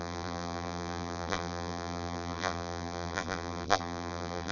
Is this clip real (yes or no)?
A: no